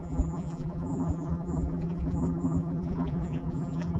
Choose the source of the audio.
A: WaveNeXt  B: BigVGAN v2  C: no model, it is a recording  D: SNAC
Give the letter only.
B